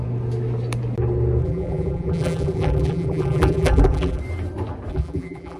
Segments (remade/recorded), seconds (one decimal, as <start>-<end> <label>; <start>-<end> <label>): 0.0-1.4 recorded; 1.4-4.2 remade; 4.2-4.9 recorded; 4.9-5.6 remade